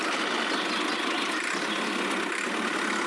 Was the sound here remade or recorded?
recorded